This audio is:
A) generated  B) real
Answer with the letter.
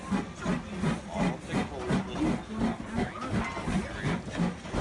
B